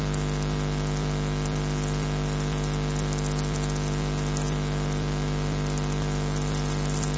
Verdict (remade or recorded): recorded